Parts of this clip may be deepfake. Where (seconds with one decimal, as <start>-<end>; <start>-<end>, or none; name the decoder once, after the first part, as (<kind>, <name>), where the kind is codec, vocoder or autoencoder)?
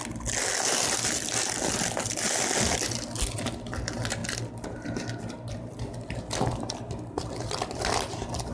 none